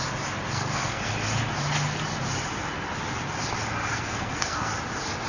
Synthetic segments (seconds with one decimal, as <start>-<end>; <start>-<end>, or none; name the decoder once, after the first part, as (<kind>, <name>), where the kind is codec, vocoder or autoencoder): 0.5-1.1 (codec, SNAC); 3.9-4.7